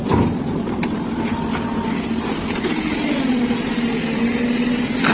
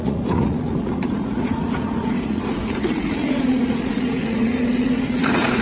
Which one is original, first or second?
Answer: first